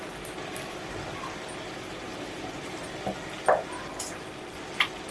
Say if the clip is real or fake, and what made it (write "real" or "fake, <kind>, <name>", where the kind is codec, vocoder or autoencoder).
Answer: real